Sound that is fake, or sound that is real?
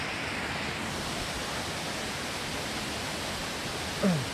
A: real